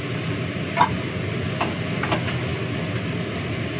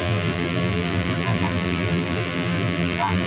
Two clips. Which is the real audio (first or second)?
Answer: first